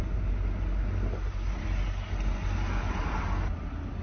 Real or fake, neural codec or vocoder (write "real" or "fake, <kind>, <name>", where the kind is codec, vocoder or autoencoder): real